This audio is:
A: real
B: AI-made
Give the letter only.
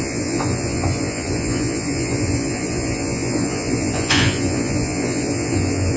B